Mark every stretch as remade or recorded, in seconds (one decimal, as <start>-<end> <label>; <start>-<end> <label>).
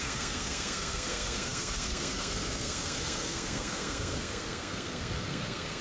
0.0-5.8 remade